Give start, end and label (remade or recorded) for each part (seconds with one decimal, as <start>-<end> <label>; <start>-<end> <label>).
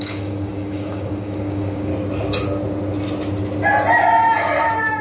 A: 0.0-1.9 remade; 1.9-5.0 recorded